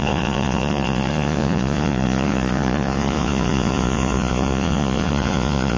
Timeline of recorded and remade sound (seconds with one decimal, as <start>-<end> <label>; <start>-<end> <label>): 0.0-5.8 remade